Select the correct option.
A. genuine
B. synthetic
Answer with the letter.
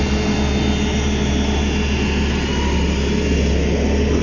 A